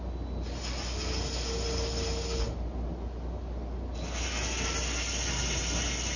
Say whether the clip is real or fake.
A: real